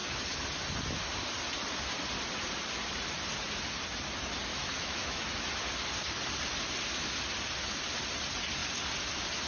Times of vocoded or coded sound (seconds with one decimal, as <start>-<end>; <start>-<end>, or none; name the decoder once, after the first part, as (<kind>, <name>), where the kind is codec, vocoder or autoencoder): 4.5-5.5 (autoencoder, DAC-VAE)

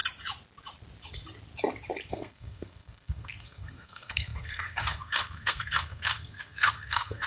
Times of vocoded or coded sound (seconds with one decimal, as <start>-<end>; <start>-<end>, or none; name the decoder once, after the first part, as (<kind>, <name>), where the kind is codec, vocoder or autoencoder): 2.1-7.3 (codec, SNAC)